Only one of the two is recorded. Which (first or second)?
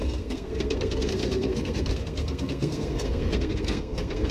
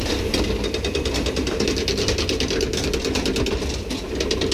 second